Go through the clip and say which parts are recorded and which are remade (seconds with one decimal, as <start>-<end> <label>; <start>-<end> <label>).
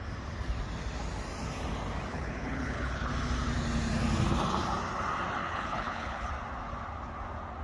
0.0-2.1 recorded; 2.1-3.1 remade; 3.1-5.4 recorded; 5.4-6.3 remade; 6.3-7.6 recorded